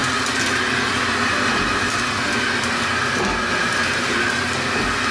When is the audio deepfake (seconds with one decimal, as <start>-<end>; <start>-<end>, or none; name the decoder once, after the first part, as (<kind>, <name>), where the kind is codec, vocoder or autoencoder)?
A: 3.6-4.3 (vocoder, BigVGAN v2)